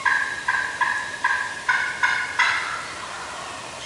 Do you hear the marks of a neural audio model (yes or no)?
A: no